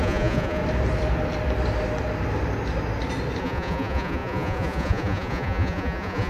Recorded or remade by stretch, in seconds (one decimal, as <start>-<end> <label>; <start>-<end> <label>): 0.0-0.6 remade; 0.6-3.4 recorded; 3.4-6.3 remade